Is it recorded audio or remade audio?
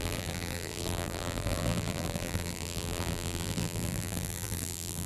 remade